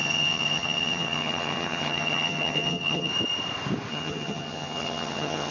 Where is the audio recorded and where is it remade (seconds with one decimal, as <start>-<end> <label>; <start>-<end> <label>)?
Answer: 0.0-3.1 remade; 3.1-3.9 recorded; 3.9-5.5 remade